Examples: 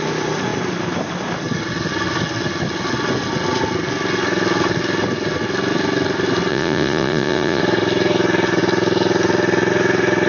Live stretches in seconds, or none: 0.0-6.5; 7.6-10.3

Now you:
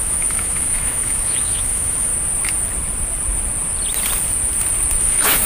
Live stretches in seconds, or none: 2.1-5.0

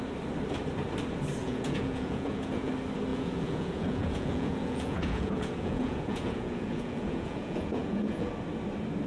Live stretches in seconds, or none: 0.0-1.4; 2.7-3.1; 8.3-9.1

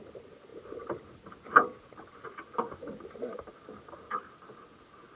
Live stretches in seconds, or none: 0.0-5.2

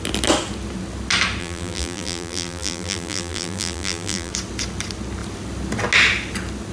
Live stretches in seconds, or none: 0.0-1.4; 4.3-6.7